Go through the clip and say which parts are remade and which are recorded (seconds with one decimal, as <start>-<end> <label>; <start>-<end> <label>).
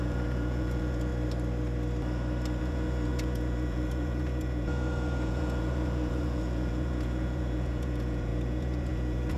0.0-1.1 remade; 1.1-2.6 recorded; 2.6-9.4 remade